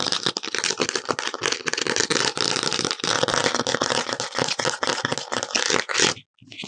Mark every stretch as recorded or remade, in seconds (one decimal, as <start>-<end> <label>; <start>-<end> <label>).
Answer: 0.0-6.7 recorded